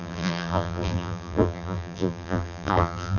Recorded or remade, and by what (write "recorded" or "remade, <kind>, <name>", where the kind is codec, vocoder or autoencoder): remade, vocoder, BigVGAN v2